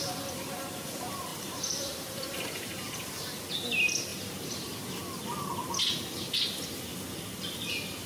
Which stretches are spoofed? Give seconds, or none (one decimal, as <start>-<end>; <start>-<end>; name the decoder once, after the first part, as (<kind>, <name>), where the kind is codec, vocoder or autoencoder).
1.3-3.4 (vocoder, BigVGAN v2); 4.1-5.0